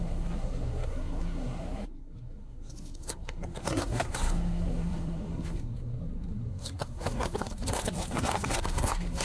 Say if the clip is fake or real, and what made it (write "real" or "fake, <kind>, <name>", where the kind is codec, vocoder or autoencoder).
fake, codec, SNAC